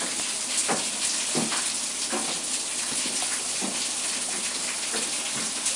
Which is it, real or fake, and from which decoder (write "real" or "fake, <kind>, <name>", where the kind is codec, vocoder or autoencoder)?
real